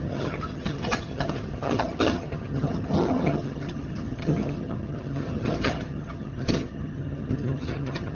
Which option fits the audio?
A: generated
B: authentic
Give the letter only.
A